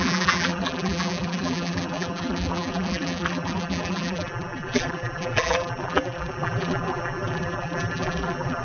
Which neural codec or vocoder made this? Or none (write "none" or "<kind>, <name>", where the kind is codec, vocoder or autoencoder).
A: vocoder, BigVGAN v2